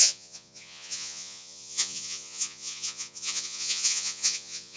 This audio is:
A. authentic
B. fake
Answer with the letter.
B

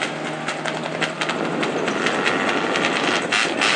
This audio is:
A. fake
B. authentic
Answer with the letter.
B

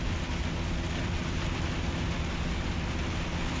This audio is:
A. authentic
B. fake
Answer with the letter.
A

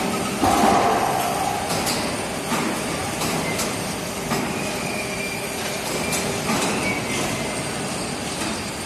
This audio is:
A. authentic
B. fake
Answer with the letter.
A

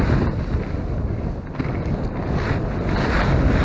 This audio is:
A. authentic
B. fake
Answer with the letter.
A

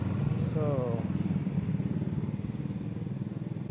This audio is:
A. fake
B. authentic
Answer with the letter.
B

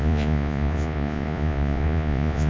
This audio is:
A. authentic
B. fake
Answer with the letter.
B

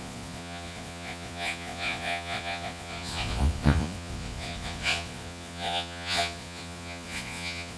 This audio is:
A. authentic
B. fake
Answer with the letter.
B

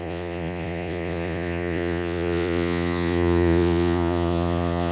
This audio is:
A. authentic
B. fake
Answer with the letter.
B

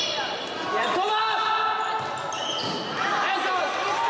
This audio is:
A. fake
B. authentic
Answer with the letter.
B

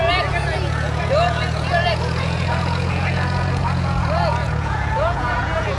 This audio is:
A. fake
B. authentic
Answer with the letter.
A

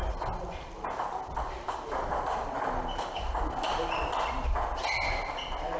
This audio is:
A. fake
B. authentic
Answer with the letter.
B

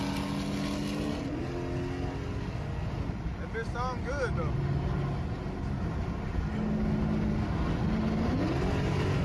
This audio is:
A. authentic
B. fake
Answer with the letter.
A